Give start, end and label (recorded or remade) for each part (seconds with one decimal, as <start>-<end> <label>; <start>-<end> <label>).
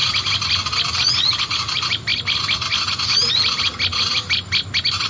0.0-5.1 recorded